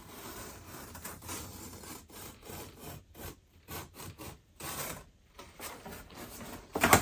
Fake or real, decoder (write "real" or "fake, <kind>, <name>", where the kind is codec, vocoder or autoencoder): fake, vocoder, BigVGAN v2